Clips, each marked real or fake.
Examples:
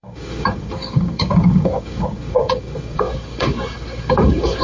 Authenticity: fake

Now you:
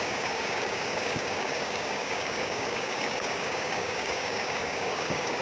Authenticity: fake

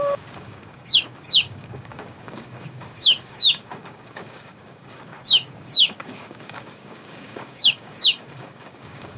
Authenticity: fake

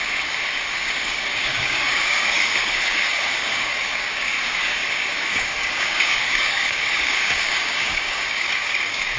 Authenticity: fake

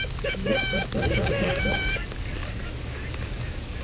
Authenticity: fake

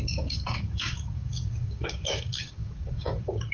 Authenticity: fake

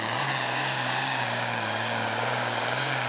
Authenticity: fake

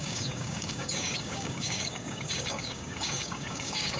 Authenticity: fake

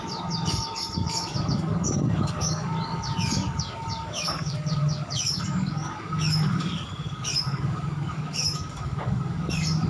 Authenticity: fake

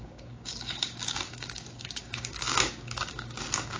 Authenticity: fake